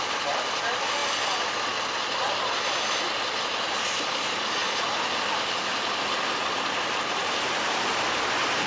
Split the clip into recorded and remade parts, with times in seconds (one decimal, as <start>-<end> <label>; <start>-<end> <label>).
0.0-8.7 recorded